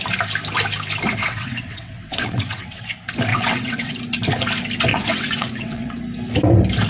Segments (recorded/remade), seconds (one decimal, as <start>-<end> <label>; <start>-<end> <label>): 0.0-1.2 recorded; 1.2-2.8 remade; 2.8-3.3 recorded; 3.3-4.0 remade; 4.0-4.9 recorded; 4.9-6.0 remade; 6.0-6.9 recorded